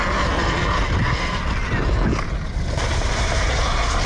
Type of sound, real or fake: real